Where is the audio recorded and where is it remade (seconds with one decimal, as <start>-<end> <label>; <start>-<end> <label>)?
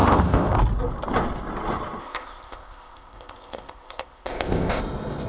0.0-0.5 remade; 0.5-2.0 recorded; 2.0-4.8 remade; 4.8-5.3 recorded